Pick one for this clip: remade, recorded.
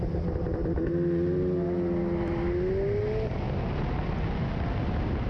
recorded